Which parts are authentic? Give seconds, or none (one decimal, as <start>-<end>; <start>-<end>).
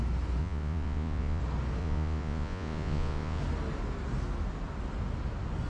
0.0-0.4; 1.4-1.8; 3.4-5.7